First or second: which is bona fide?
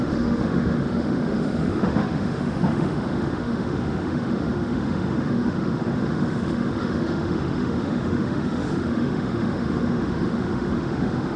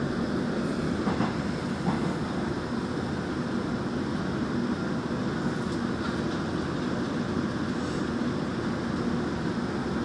second